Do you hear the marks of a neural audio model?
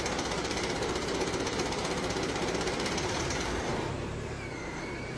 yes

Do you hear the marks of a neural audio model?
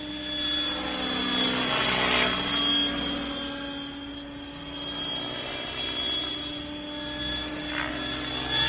no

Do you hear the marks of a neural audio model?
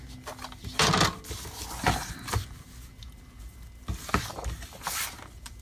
no